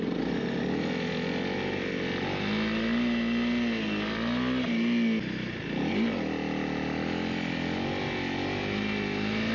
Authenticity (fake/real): real